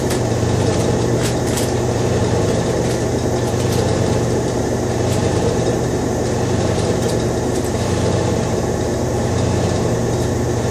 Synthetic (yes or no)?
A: yes